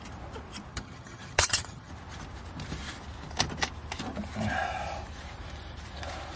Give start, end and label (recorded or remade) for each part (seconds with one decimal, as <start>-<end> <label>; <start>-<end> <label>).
0.0-0.7 recorded; 0.7-1.9 remade; 1.9-6.4 recorded